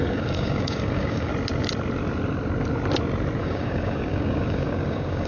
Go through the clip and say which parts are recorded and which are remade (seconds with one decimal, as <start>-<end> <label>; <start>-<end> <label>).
0.0-1.3 remade; 1.3-3.4 recorded; 3.4-5.3 remade

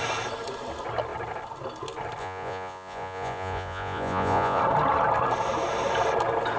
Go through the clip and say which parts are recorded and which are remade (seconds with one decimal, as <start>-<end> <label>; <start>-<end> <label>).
0.0-2.2 recorded; 2.2-4.6 remade; 4.6-6.6 recorded

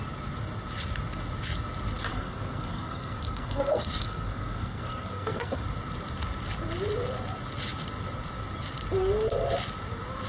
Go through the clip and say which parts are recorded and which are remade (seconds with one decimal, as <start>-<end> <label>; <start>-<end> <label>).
0.0-2.1 recorded; 2.1-5.6 remade; 5.6-10.3 recorded

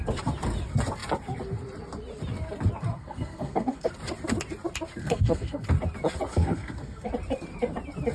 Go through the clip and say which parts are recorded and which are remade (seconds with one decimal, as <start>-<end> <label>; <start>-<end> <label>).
0.0-2.9 recorded; 2.9-3.9 remade; 3.9-5.0 recorded; 5.0-5.7 remade; 5.7-6.3 recorded; 6.3-7.1 remade; 7.1-8.1 recorded

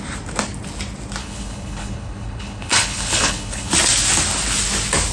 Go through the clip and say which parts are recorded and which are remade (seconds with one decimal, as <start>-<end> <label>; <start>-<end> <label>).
0.0-1.2 recorded; 1.2-3.7 remade; 3.7-5.1 recorded